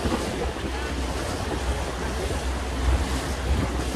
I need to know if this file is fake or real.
real